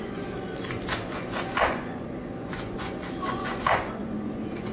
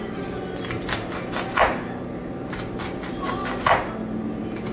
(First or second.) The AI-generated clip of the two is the first